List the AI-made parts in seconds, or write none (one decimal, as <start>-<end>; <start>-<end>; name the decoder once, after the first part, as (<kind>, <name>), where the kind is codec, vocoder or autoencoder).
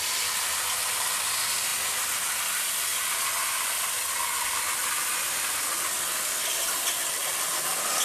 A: none